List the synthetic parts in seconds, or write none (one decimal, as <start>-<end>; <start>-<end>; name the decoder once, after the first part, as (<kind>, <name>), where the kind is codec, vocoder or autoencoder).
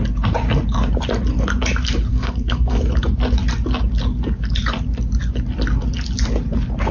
2.1-2.8 (codec, SNAC)